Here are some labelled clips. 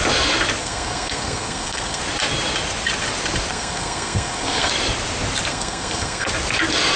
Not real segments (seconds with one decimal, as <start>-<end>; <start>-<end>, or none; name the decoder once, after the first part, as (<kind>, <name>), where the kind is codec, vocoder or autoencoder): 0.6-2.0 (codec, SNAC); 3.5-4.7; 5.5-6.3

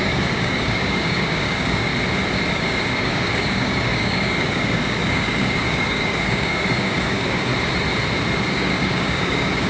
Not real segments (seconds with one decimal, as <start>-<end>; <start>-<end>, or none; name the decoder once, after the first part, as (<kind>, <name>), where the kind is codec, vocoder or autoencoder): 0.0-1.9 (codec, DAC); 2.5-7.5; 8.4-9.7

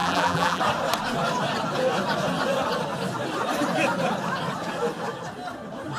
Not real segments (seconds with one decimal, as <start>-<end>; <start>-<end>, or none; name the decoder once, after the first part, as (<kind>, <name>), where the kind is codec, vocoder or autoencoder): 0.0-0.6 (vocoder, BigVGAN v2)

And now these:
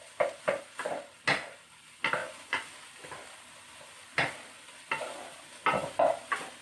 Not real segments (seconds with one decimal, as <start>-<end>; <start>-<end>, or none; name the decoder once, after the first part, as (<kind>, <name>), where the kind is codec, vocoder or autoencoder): 2.2-2.7 (vocoder, Vocos)

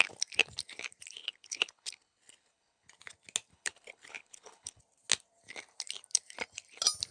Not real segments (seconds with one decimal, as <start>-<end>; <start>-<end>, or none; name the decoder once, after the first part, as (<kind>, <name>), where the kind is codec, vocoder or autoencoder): 1.2-2.9 (codec, HILCodec); 3.5-4.8

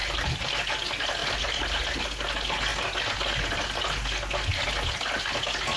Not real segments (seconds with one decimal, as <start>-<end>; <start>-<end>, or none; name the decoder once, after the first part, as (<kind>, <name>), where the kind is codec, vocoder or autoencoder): 0.0-0.7 (vocoder, BigVGAN v2)

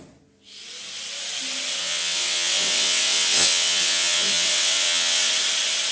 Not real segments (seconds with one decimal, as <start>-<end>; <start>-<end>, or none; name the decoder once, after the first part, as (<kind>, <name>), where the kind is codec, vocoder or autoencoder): 1.8-5.3 (vocoder, WaveNeXt)

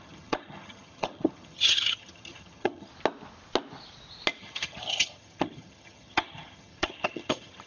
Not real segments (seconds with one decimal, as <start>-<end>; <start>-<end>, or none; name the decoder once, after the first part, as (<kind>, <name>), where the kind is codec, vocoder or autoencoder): 0.0-2.9 (vocoder, HiFi-GAN); 4.4-7.7